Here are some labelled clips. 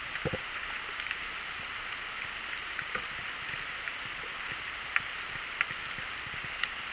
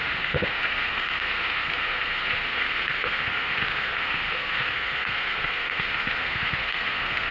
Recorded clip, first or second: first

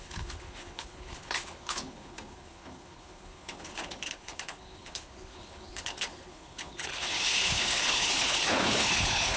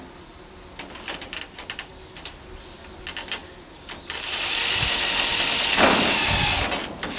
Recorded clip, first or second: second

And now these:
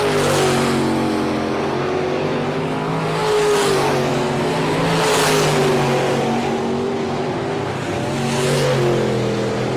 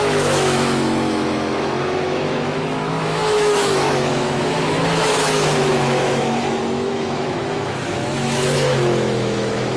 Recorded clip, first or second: first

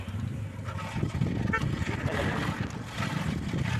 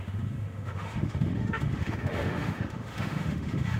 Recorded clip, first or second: first